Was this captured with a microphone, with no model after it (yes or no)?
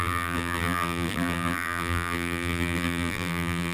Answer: no